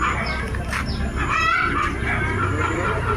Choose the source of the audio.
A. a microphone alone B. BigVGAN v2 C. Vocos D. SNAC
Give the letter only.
A